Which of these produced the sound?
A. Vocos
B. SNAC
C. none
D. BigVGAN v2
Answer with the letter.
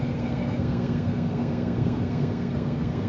B